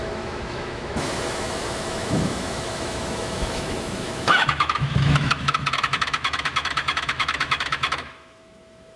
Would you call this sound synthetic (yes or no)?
yes